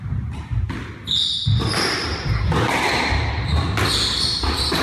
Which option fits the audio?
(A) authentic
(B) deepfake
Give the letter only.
A